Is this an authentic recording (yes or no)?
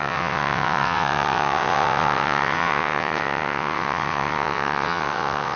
no